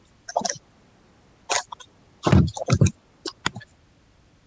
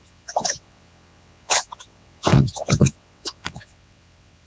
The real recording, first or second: first